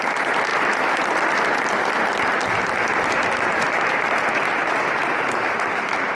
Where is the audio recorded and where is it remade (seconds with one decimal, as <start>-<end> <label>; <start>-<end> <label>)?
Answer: 0.0-4.6 remade; 4.6-6.1 recorded